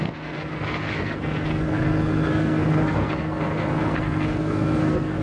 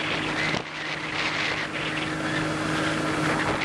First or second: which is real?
second